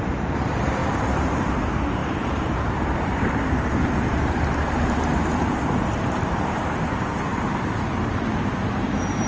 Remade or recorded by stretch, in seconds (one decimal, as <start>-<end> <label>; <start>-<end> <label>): 0.0-9.3 remade